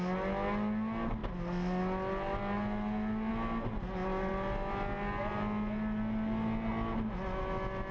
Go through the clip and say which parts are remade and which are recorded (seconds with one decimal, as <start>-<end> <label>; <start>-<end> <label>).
0.0-7.9 recorded

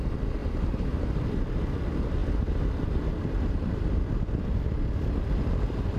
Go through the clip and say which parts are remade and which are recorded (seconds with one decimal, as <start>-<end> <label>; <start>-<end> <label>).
0.0-0.4 recorded; 0.4-1.3 remade; 1.3-2.2 recorded; 2.2-4.5 remade; 4.5-6.0 recorded